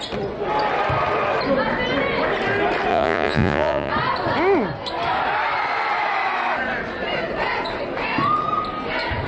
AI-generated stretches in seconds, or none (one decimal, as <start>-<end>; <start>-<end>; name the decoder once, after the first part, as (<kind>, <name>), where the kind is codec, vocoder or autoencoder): 2.9-3.9 (vocoder, Vocos)

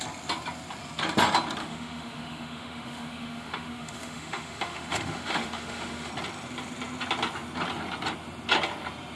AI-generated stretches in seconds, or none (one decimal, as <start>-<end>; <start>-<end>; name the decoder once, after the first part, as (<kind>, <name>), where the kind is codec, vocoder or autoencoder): 1.6-6.1 (autoencoder, DAC-VAE)

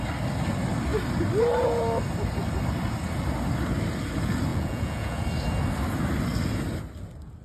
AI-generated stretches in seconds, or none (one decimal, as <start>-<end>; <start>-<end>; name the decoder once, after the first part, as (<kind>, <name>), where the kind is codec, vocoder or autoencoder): 4.5-5.2 (vocoder, Vocos)

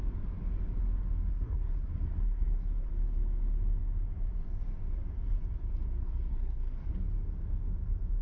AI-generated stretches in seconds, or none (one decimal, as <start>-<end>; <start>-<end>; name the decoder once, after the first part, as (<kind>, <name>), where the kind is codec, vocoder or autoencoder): 1.3-2.9 (codec, SNAC); 6.0-6.9

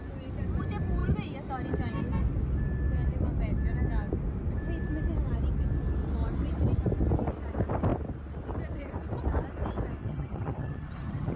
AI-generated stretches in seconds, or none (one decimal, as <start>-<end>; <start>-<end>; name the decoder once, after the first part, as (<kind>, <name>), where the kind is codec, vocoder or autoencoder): 10.0-11.4 (vocoder, HiFi-GAN)

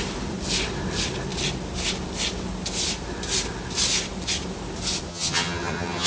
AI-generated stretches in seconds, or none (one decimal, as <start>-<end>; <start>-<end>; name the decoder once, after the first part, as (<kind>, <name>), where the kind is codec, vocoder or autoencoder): 5.1-6.1 (vocoder, HiFi-GAN)

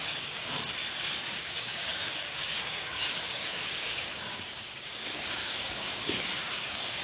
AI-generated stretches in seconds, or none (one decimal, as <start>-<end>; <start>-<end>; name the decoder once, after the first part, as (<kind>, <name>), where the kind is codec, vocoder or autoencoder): 0.0-0.8 (codec, DAC); 1.4-7.0